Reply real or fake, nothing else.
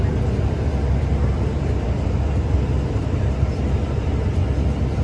fake